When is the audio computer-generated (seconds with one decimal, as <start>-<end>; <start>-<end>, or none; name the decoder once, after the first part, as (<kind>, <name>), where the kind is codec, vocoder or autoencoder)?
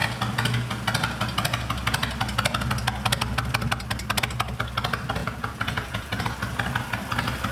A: 5.2-6.2 (vocoder, Vocos)